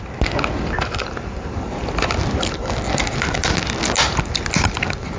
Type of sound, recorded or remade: recorded